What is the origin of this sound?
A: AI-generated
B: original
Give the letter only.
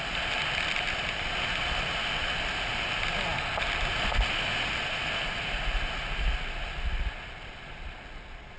B